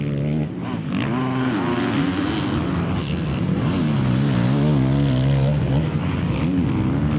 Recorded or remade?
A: recorded